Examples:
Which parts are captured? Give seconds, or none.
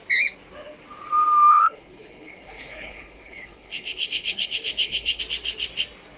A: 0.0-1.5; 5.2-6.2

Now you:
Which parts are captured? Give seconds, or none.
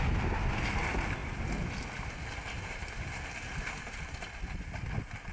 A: 0.0-5.3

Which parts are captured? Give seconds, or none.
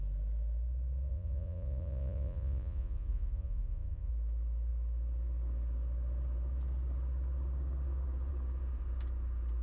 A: 0.0-1.1; 4.1-9.6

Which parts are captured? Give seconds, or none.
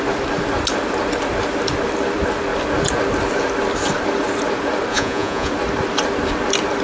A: 0.0-4.9; 5.5-6.8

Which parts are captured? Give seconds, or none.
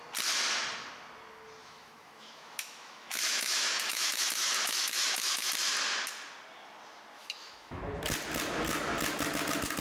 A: 0.0-1.6; 5.5-7.2; 7.8-9.8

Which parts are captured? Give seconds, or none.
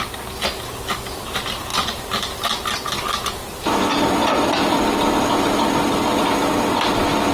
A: 0.0-7.3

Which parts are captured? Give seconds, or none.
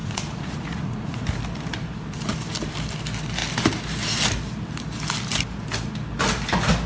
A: 1.2-6.9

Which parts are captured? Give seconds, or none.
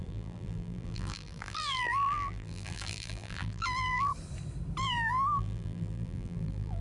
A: 4.1-4.8